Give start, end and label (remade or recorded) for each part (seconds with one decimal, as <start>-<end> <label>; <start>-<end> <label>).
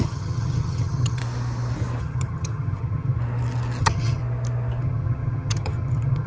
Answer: 0.0-1.2 remade; 1.2-2.0 recorded; 2.0-3.2 remade; 3.2-3.8 recorded; 3.8-4.2 remade; 4.2-4.8 recorded; 4.8-6.3 remade